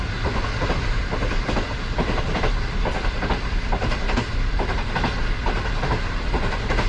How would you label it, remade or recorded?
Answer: recorded